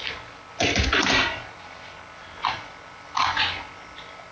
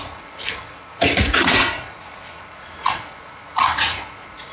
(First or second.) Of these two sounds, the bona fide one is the first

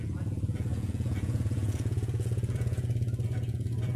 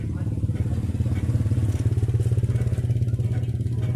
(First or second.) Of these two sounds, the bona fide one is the second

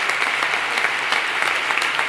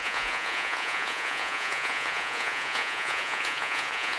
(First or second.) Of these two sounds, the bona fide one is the first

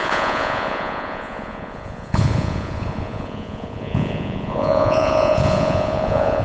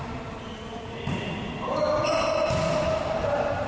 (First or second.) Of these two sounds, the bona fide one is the second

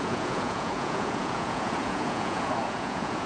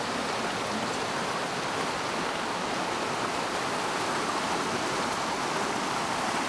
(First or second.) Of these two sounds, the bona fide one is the second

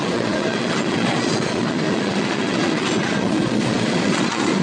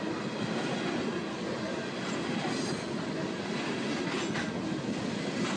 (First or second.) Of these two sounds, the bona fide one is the second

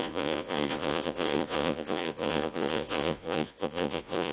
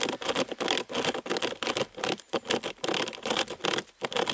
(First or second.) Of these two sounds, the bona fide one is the second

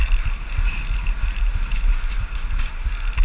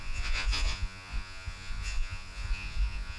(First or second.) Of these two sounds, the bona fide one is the first